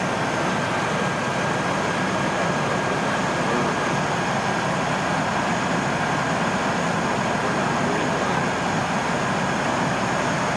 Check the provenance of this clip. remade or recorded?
recorded